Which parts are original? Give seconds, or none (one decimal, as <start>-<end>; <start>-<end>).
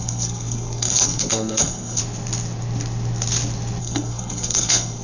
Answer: 2.0-3.8